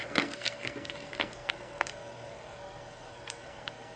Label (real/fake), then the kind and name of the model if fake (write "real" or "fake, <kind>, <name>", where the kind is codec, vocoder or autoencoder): fake, codec, SNAC